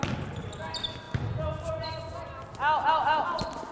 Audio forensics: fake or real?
real